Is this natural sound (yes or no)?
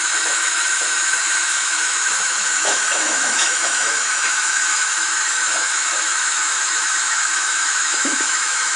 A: no